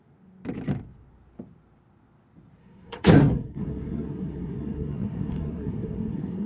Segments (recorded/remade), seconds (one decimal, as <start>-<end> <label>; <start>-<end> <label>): 0.0-2.6 recorded; 2.6-6.5 remade